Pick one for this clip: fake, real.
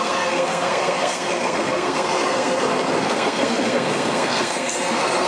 fake